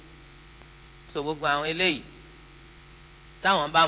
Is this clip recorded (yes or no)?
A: no